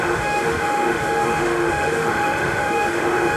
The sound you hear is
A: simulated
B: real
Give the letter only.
A